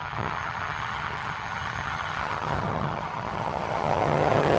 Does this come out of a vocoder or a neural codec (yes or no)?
yes